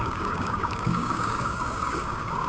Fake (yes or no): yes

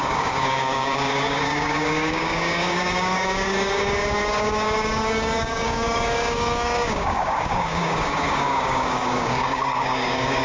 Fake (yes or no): yes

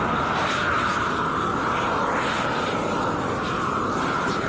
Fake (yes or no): no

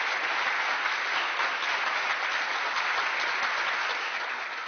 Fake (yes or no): no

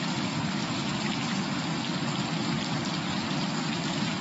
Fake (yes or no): no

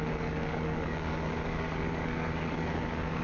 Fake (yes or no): yes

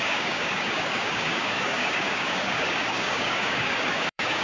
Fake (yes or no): yes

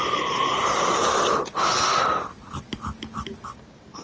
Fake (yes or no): no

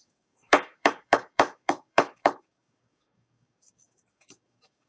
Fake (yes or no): yes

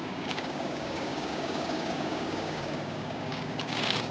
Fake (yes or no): yes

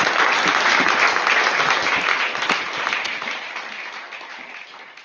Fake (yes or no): no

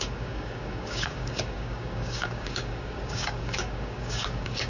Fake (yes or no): yes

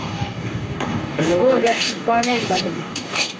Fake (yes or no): yes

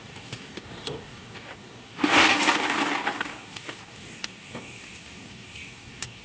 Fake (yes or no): yes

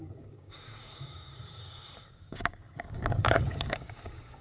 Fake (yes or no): yes